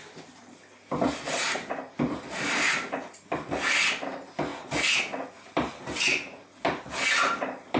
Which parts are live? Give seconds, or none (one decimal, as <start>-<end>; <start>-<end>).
0.0-7.8